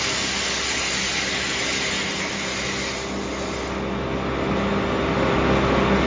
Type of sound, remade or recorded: recorded